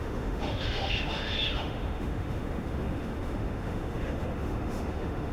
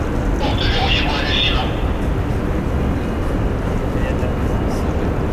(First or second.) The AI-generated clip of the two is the first